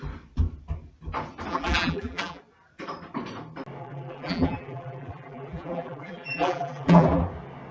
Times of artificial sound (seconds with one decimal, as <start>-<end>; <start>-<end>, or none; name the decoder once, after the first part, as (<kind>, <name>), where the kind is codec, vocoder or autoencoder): 1.5-2.4 (vocoder, BigVGAN v2); 3.8-7.2